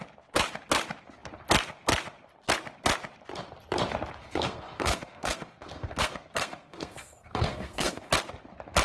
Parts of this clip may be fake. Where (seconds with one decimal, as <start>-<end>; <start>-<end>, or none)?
4.2-8.1

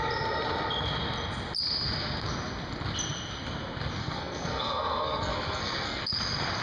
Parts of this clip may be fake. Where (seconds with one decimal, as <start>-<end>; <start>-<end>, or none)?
4.0-6.0